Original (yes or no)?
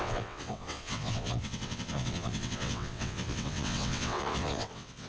no